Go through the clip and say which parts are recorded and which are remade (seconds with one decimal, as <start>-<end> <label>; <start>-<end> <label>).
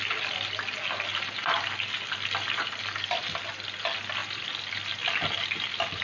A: 0.0-6.0 recorded